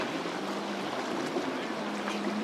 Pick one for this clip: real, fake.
real